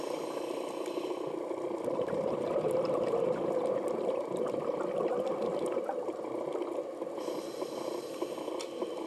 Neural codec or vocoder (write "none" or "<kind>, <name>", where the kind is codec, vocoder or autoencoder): none